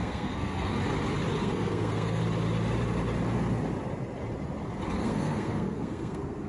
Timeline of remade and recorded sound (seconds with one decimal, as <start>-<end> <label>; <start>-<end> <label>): 0.0-0.7 remade; 0.7-1.4 recorded; 1.4-2.2 remade; 2.2-5.0 recorded; 5.0-6.5 remade